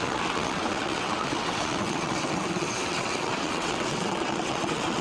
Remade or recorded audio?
remade